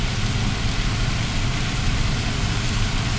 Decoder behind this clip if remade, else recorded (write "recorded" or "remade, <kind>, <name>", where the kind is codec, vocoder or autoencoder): recorded